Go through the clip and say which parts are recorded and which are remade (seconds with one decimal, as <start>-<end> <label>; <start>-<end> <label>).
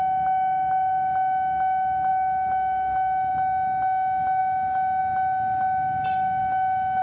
0.0-2.1 recorded; 2.1-3.3 remade; 3.3-6.4 recorded; 6.4-7.0 remade